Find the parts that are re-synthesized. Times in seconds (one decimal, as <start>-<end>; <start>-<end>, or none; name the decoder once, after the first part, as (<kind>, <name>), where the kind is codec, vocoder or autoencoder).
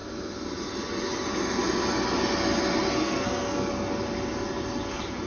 3.0-3.7 (codec, SNAC)